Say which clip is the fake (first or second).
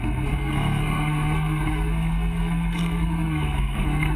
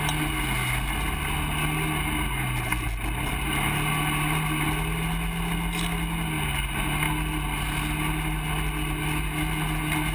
first